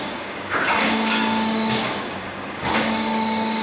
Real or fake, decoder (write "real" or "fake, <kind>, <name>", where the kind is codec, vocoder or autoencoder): fake, codec, DAC